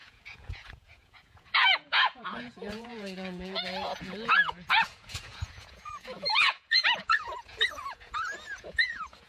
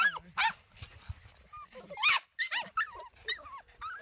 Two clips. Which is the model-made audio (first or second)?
first